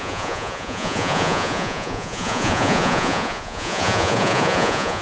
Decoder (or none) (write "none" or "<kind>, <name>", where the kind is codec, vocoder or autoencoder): vocoder, Vocos